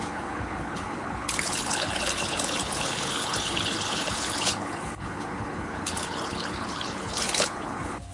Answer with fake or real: fake